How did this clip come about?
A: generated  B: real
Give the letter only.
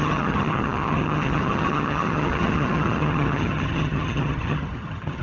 A